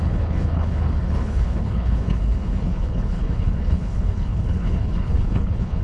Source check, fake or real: fake